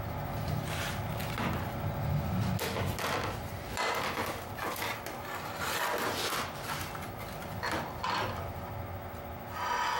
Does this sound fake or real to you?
real